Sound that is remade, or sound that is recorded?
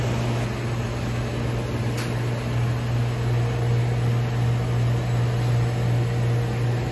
recorded